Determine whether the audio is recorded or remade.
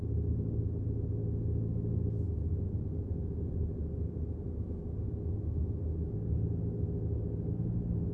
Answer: recorded